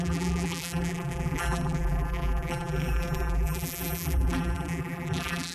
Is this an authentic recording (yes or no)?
no